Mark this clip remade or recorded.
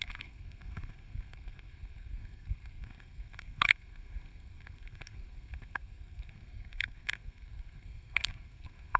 remade